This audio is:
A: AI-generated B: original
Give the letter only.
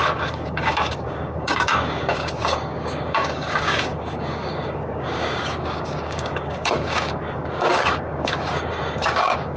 A